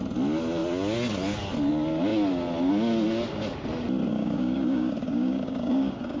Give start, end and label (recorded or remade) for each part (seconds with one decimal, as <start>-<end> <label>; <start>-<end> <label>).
0.0-4.1 recorded; 4.1-6.2 remade